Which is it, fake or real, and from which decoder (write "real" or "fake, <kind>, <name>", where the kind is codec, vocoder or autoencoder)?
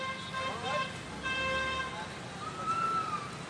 real